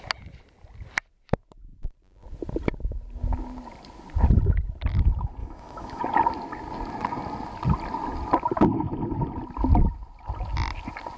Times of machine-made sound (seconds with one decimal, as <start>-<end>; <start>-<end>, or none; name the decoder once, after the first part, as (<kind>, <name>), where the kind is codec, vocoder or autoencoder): 5.4-6.0 (autoencoder, DAC-VAE)